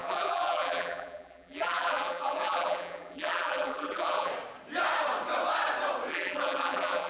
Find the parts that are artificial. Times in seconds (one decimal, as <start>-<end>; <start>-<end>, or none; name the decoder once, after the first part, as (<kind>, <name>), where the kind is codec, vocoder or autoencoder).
0.0-4.3 (vocoder, BigVGAN v2); 6.1-7.1